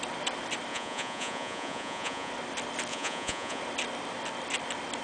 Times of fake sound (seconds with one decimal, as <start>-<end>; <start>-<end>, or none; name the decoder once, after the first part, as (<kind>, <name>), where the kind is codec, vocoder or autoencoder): 0.7-2.3 (vocoder, Vocos); 2.9-3.6